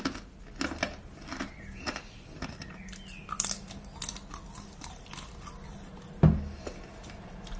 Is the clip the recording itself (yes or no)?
yes